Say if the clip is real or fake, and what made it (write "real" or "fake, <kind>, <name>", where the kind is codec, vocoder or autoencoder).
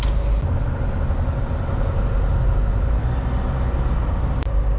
real